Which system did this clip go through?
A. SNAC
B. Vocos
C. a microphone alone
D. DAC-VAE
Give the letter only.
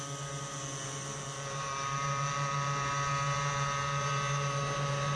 C